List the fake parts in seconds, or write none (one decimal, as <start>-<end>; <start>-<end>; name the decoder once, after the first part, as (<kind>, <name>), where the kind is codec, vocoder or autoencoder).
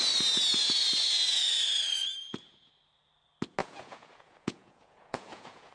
2.2-2.7 (vocoder, Vocos); 3.6-5.7